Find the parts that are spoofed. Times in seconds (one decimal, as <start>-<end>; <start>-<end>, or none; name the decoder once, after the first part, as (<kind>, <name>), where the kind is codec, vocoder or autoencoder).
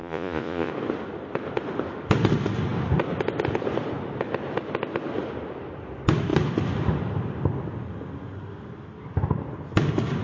0.0-0.7 (vocoder, Vocos)